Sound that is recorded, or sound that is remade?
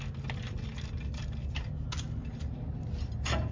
recorded